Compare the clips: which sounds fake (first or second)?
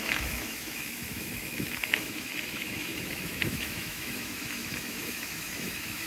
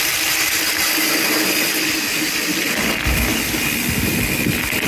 first